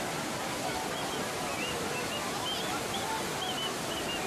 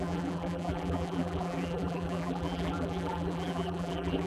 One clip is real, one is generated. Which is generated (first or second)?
second